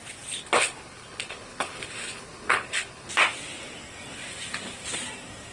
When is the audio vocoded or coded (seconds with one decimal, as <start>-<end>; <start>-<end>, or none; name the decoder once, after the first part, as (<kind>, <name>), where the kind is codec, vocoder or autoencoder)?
0.4-3.1 (codec, HILCodec)